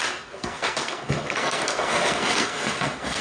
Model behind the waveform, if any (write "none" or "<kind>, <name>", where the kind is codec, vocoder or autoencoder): codec, SNAC